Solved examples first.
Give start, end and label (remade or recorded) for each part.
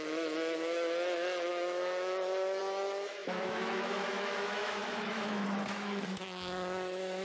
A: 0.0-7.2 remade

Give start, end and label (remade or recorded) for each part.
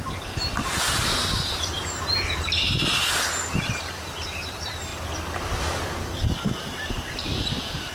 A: 0.0-4.9 remade; 4.9-7.4 recorded; 7.4-7.9 remade